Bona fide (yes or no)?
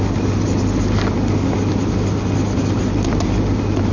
yes